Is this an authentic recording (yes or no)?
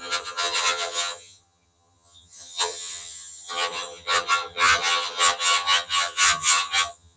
no